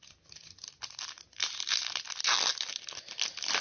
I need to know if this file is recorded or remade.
recorded